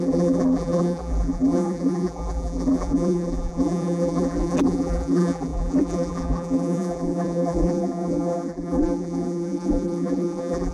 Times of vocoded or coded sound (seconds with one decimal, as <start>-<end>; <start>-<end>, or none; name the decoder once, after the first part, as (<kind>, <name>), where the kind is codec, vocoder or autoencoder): 0.0-10.7 (vocoder, BigVGAN v2)